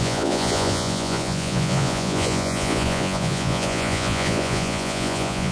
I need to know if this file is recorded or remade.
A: remade